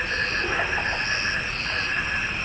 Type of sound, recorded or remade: recorded